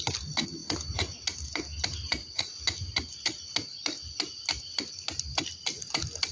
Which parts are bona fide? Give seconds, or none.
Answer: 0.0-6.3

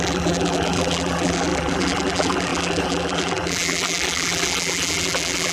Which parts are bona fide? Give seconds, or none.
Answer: none

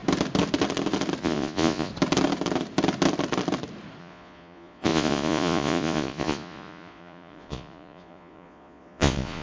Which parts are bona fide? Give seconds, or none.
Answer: 0.0-1.2; 1.9-4.0

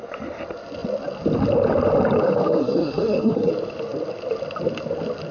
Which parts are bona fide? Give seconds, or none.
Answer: 0.0-2.6; 3.5-5.3